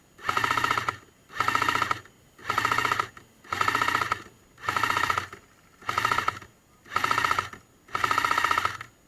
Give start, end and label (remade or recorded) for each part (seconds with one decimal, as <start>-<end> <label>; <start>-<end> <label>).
0.0-9.1 recorded